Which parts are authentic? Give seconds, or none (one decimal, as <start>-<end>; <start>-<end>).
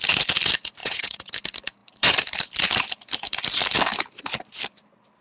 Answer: 0.0-0.8; 1.3-5.2